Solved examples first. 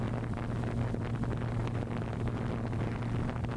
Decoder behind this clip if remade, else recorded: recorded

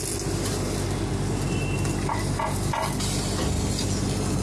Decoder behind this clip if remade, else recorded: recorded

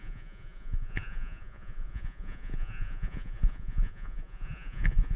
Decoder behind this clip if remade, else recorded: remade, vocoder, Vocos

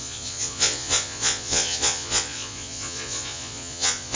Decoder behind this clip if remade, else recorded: remade, vocoder, Vocos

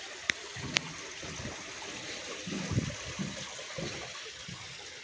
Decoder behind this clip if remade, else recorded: recorded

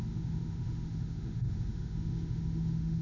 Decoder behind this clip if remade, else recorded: remade, autoencoder, DAC-VAE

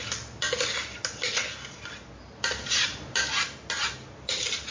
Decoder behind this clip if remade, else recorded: recorded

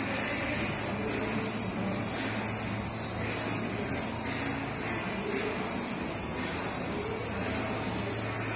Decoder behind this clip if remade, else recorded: recorded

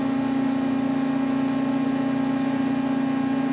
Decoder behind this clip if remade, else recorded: recorded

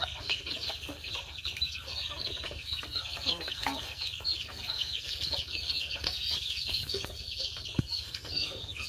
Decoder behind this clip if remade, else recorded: remade, codec, SNAC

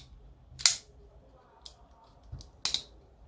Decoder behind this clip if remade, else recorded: recorded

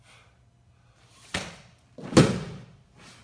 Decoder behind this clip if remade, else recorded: recorded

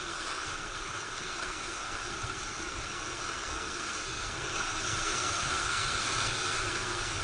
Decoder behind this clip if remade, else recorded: remade, codec, SNAC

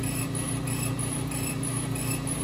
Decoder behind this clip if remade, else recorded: recorded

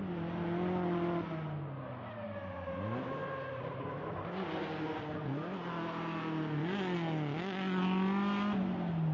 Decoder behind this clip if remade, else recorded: recorded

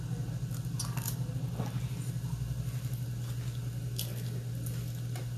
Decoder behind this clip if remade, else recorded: recorded